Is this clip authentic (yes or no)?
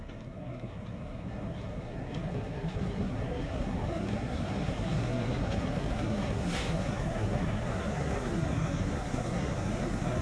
no